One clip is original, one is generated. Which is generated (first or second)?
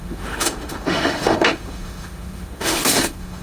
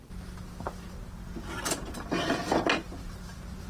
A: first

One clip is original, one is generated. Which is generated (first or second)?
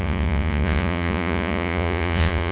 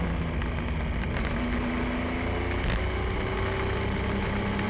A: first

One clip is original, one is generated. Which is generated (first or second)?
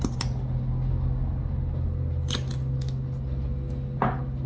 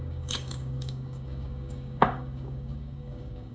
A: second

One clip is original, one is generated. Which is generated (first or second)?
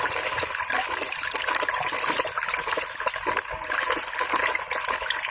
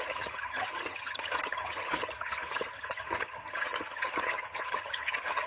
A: second